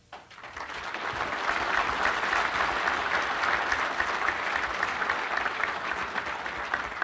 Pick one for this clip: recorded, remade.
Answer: recorded